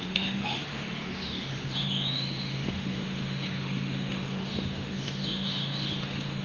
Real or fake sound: fake